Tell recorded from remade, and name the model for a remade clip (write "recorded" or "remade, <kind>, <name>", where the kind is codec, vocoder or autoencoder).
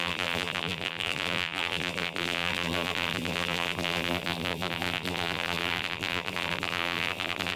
remade, vocoder, BigVGAN v2